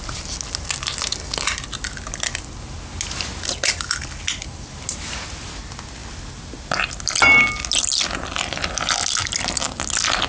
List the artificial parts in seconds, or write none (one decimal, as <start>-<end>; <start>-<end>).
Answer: none

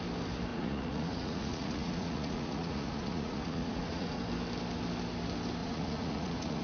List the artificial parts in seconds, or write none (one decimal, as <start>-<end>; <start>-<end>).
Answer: 0.5-4.2; 5.6-6.6

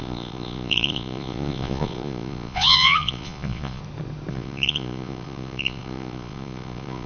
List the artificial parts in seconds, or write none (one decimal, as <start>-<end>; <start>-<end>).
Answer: 0.0-3.8; 4.3-7.1

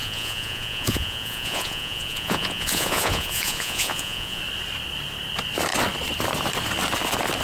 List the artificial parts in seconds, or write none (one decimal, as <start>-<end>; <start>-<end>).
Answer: 0.0-4.4

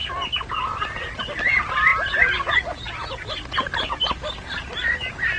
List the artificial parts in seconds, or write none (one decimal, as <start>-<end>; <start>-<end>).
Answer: none

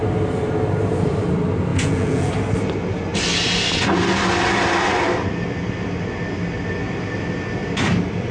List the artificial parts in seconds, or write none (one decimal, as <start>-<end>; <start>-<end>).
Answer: 1.7-2.3